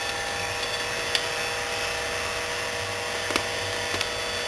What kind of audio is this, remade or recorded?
recorded